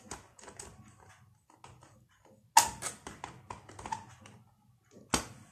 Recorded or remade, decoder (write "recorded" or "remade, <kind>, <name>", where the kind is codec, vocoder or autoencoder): recorded